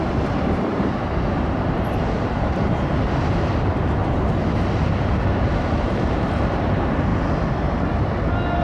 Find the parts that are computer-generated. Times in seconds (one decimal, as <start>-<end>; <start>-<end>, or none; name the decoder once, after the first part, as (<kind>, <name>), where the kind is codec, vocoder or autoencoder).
0.0-4.0 (vocoder, BigVGAN v2); 5.0-7.1